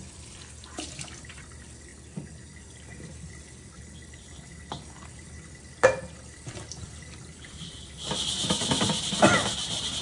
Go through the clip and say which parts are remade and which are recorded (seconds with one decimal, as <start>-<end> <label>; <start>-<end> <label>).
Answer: 0.0-1.9 remade; 1.9-2.6 recorded; 2.6-10.0 remade

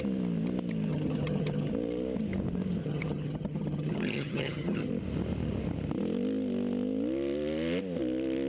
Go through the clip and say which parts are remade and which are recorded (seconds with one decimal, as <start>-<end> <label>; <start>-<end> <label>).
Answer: 0.0-0.9 recorded; 0.9-1.7 remade; 1.7-2.8 recorded; 2.8-4.9 remade; 4.9-8.5 recorded

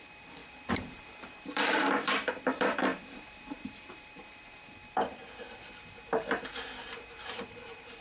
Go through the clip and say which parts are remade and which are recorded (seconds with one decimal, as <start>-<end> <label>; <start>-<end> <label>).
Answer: 0.0-8.0 remade

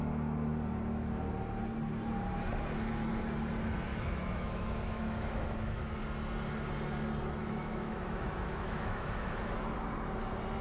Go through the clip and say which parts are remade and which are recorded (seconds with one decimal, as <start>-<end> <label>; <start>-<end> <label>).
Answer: 0.0-3.9 recorded; 3.9-6.0 remade; 6.0-7.4 recorded; 7.4-9.4 remade; 9.4-10.6 recorded

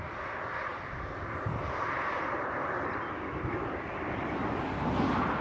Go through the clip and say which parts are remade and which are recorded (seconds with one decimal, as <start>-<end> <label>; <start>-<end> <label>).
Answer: 0.0-5.4 recorded